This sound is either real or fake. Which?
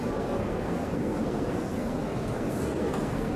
fake